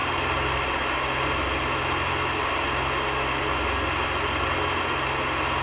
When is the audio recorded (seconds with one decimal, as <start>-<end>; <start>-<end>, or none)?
0.0-5.6